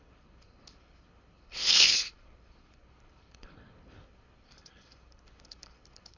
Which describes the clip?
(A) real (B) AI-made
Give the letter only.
B